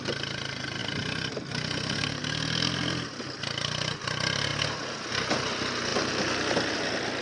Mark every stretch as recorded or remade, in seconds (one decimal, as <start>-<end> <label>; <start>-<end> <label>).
0.0-7.2 recorded